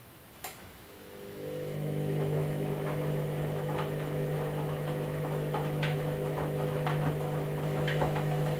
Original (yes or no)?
no